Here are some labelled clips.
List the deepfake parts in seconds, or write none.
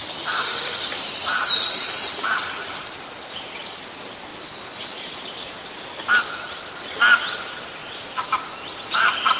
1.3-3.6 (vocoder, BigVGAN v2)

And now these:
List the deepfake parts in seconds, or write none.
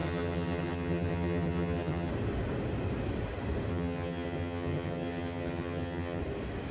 0.0-2.1 (vocoder, HiFi-GAN); 3.7-6.2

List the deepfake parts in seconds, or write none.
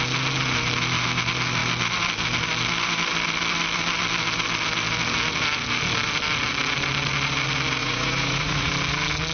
7.8-8.7 (vocoder, Vocos)